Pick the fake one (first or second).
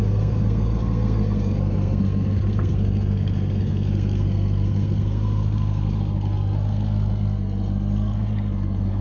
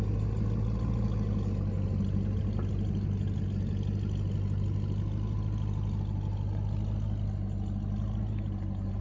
first